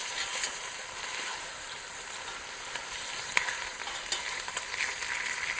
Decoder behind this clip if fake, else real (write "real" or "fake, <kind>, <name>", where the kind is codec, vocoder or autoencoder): real